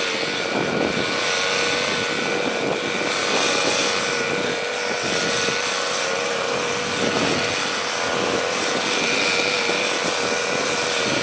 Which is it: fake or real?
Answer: real